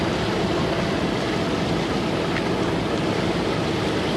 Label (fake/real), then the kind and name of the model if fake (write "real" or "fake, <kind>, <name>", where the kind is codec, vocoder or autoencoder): real